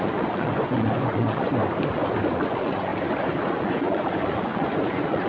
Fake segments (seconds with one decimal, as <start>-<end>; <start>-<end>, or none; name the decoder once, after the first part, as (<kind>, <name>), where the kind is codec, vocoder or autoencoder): 0.0-1.5 (vocoder, Vocos); 2.3-2.9; 3.5-5.3